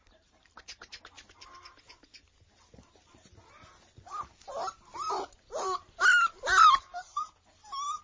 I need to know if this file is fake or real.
real